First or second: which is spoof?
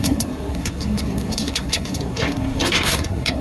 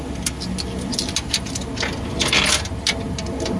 first